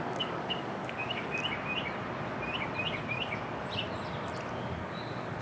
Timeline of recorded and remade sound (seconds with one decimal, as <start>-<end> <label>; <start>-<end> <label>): 0.0-1.4 remade; 1.4-4.6 recorded; 4.6-5.4 remade